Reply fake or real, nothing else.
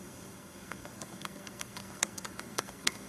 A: fake